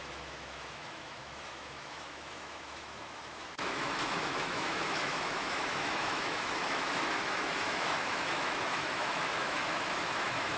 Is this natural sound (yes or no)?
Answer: no